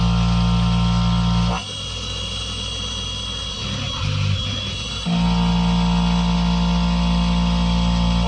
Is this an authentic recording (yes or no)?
yes